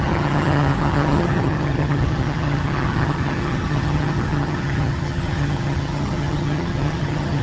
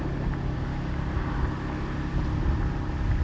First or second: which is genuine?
second